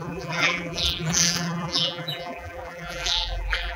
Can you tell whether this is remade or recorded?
remade